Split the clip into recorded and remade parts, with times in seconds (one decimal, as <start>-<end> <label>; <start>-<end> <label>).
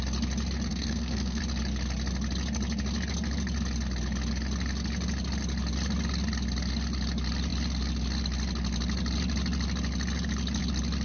0.0-0.7 recorded; 0.7-1.4 remade; 1.4-11.0 recorded